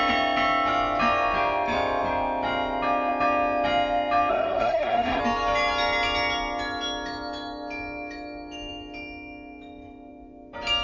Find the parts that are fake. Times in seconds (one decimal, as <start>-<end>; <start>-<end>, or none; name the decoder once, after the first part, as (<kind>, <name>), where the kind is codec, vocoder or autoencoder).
4.3-5.2 (codec, SNAC)